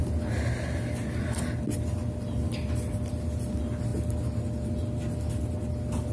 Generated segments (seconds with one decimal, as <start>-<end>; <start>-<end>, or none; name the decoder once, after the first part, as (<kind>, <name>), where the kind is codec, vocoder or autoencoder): none